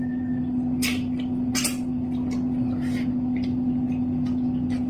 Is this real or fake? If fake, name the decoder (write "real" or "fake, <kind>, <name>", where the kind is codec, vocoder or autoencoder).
real